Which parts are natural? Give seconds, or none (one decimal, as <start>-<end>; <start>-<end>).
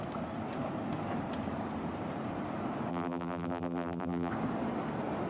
0.0-2.9; 4.3-5.3